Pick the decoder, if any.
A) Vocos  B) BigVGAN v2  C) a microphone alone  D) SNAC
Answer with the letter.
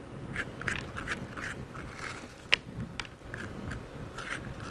C